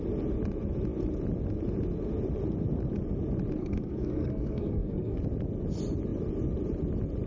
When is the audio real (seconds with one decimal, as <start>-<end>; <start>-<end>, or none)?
0.0-3.6; 5.2-7.3